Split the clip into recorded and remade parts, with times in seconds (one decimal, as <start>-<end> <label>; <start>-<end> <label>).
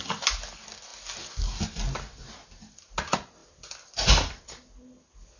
0.0-5.4 recorded